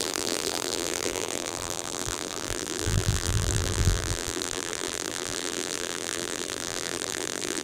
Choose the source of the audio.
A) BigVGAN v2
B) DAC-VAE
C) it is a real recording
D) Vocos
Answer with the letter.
A